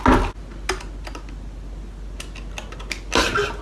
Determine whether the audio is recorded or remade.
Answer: recorded